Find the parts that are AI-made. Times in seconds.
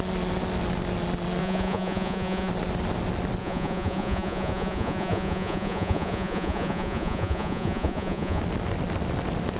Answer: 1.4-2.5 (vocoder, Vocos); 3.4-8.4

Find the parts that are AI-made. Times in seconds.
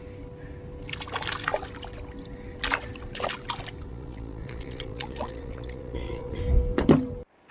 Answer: 3.9-6.4 (vocoder, Vocos)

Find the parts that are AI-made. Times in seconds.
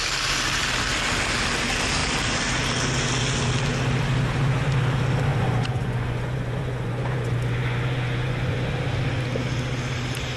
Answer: 5.3-8.7 (vocoder, Vocos)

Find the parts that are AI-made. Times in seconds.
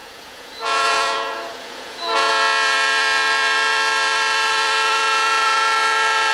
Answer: 0.0-2.3 (vocoder, Vocos)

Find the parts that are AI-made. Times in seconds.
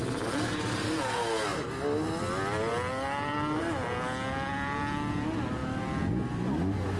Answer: none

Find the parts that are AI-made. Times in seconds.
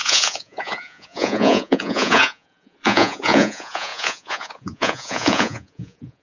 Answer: 0.0-6.2 (vocoder, Vocos)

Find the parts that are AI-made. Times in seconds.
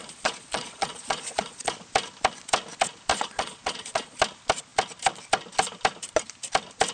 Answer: 0.0-1.7 (vocoder, Vocos); 3.1-4.2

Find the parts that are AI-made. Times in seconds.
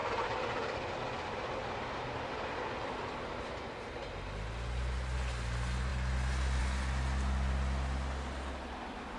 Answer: none